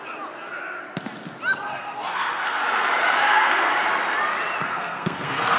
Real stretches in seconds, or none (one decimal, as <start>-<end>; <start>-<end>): 0.0-1.7; 2.6-3.2; 3.7-4.6